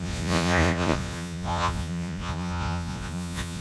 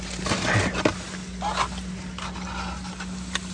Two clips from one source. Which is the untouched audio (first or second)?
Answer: second